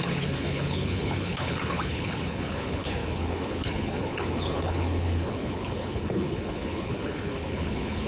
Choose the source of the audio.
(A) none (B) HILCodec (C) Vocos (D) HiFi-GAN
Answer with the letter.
B